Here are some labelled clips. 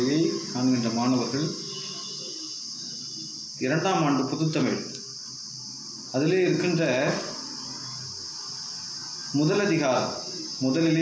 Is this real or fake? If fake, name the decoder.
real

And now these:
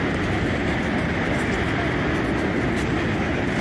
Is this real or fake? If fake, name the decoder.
real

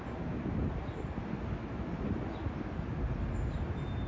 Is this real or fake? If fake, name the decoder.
real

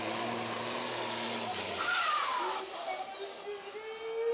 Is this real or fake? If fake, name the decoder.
real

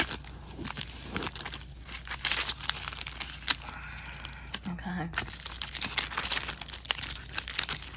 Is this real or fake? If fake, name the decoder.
real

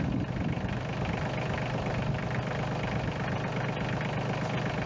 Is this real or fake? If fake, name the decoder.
real